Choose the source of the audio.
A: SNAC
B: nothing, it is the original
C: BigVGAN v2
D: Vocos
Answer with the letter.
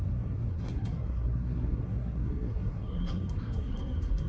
A